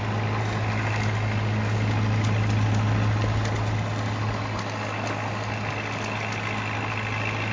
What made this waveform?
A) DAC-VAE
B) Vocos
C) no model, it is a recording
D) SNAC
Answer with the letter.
C